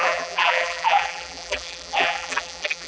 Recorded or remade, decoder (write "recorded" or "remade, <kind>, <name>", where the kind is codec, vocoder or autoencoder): remade, vocoder, BigVGAN v2